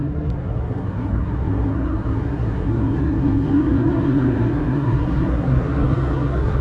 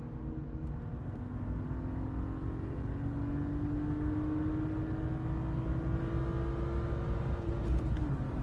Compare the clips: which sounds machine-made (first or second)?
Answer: first